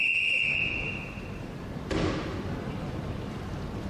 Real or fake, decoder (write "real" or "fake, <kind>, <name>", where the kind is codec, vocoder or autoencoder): real